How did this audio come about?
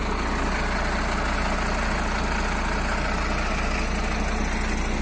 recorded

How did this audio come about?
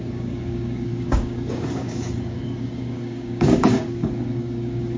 remade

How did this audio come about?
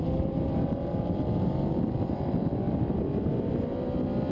recorded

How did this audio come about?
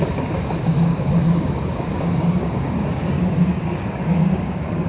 remade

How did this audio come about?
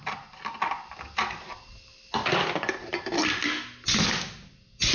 recorded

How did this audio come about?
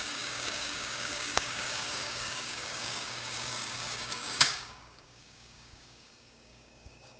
remade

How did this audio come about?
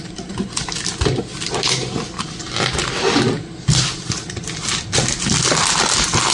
recorded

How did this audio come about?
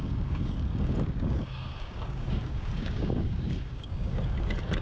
remade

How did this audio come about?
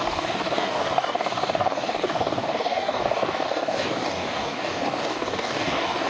remade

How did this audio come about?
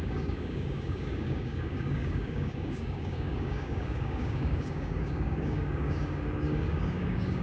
remade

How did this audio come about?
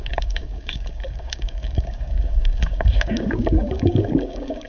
remade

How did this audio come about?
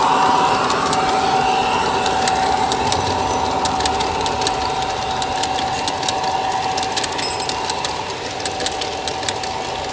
recorded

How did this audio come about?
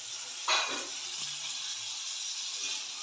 recorded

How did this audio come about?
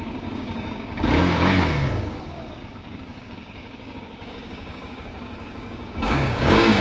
remade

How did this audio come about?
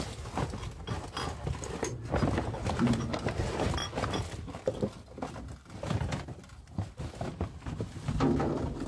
recorded